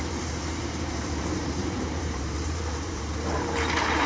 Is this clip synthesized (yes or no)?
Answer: yes